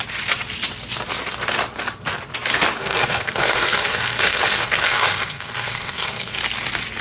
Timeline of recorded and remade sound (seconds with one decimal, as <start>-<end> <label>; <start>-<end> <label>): 0.0-2.8 recorded; 2.8-6.4 remade; 6.4-7.0 recorded